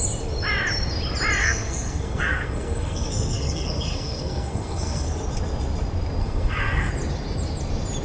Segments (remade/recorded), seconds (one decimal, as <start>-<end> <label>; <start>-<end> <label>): 0.0-1.4 recorded; 1.4-5.1 remade; 5.1-6.2 recorded; 6.2-6.9 remade; 6.9-8.0 recorded